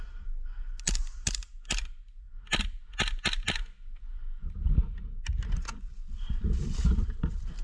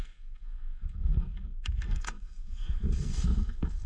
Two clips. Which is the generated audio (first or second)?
second